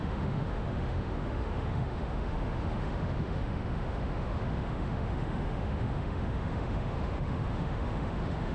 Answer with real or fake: fake